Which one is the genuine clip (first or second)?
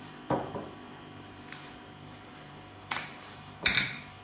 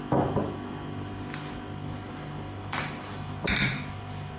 second